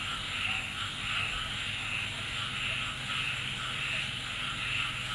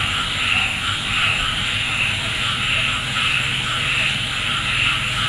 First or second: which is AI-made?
second